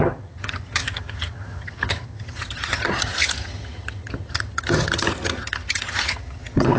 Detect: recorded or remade remade